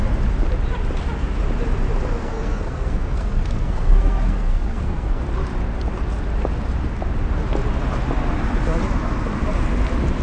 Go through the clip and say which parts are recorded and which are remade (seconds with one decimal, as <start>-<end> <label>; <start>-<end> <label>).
0.0-2.2 recorded; 2.2-5.2 remade; 5.2-10.2 recorded